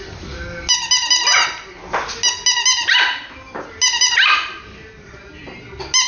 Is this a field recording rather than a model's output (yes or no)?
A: yes